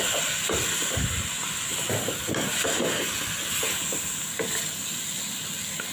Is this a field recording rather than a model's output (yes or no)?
yes